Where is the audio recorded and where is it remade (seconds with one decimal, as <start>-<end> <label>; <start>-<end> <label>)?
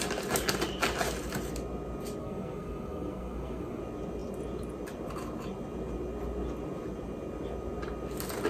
0.0-2.2 recorded; 2.2-3.8 remade; 3.8-8.5 recorded